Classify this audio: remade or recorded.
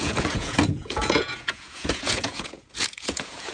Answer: remade